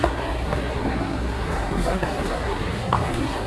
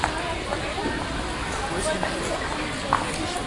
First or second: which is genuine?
second